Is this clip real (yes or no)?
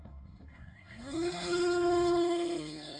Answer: no